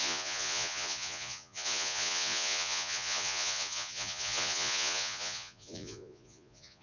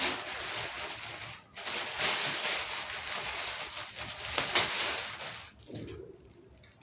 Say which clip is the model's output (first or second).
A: first